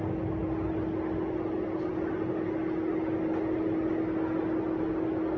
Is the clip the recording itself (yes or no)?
yes